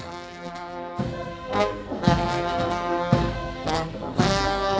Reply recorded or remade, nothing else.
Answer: remade